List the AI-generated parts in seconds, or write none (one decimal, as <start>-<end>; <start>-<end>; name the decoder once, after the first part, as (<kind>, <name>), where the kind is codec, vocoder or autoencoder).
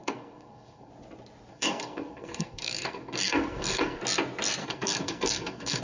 0.0-0.9 (codec, SNAC); 1.5-4.0; 4.6-5.8